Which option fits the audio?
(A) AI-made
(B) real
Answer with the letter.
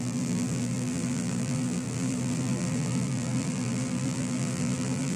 A